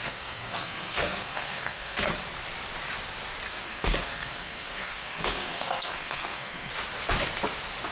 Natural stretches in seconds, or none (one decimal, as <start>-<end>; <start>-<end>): 2.1-3.5; 6.7-7.9